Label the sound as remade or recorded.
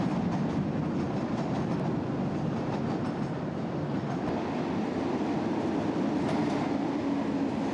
recorded